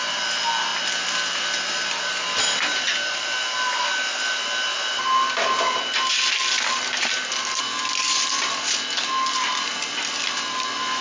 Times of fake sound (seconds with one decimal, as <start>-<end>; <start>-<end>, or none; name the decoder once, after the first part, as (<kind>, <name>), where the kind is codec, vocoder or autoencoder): none